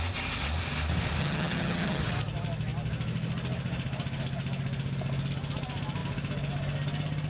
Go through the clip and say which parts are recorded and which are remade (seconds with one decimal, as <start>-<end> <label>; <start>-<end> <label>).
0.0-1.2 recorded; 1.2-2.0 remade; 2.0-7.3 recorded